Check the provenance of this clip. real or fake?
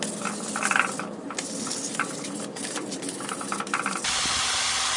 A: fake